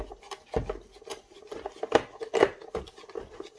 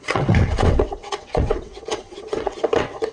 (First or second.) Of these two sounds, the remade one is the second